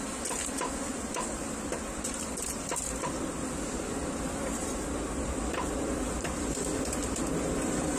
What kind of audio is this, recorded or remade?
remade